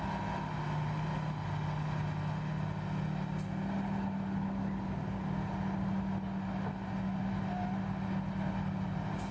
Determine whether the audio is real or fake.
real